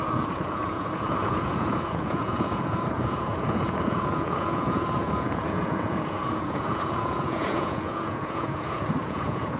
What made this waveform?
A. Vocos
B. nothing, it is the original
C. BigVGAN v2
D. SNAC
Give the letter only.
A